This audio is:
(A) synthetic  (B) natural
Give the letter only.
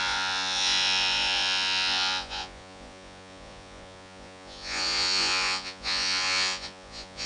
A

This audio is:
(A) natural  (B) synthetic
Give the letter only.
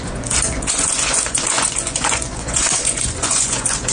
B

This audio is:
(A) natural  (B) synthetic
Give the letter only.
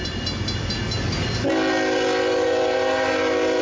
A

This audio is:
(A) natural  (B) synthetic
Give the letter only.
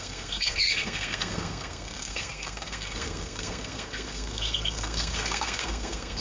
B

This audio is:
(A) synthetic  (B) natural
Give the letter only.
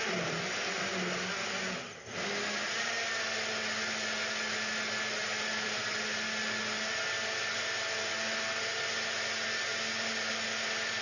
B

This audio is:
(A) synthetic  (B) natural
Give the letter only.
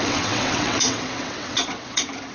A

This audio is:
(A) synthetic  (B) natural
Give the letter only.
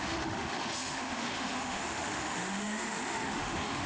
A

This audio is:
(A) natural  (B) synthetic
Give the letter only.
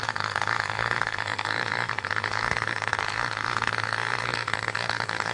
B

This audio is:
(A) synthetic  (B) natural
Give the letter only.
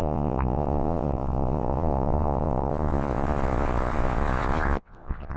A